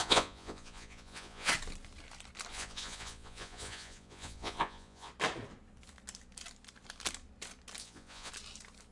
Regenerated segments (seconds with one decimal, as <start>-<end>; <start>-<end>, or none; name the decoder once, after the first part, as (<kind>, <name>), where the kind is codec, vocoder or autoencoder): 0.0-1.5 (vocoder, Vocos); 2.5-5.1; 7.8-8.3